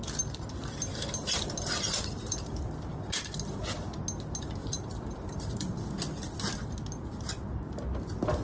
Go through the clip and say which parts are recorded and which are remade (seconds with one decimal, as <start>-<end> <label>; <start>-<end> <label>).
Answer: 0.0-4.6 recorded; 4.6-5.7 remade; 5.7-8.4 recorded